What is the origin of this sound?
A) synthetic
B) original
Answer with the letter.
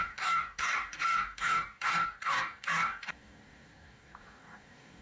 A